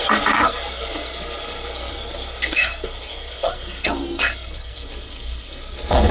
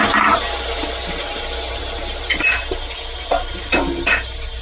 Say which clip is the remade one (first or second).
first